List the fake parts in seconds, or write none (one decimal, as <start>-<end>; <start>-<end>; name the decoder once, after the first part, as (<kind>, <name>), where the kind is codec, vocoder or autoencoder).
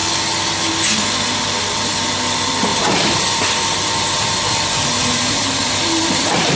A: 2.7-6.6 (vocoder, BigVGAN v2)